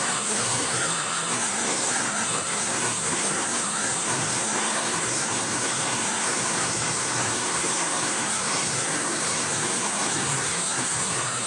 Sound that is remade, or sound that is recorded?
remade